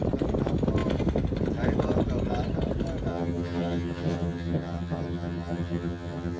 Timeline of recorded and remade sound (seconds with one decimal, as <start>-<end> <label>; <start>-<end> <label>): 0.0-3.1 recorded; 3.1-6.4 remade